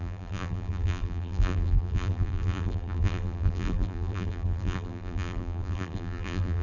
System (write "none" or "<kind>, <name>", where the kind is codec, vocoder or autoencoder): vocoder, BigVGAN v2